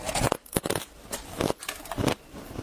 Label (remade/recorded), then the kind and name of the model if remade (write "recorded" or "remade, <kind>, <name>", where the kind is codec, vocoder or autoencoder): recorded